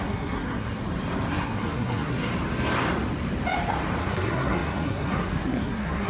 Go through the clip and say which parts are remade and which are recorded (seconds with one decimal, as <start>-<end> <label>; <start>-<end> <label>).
0.0-0.8 remade; 0.8-1.3 recorded; 1.3-2.3 remade; 2.3-4.0 recorded; 4.0-6.1 remade